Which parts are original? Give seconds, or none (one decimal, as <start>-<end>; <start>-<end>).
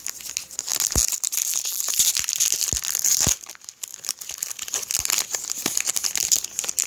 0.0-6.9